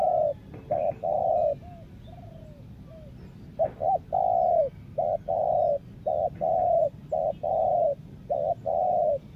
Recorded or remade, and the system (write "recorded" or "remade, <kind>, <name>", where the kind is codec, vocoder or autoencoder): recorded